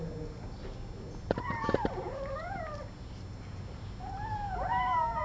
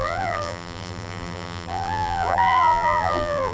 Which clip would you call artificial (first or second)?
second